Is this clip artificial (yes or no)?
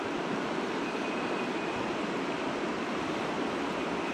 no